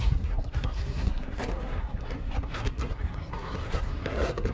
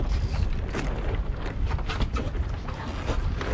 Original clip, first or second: second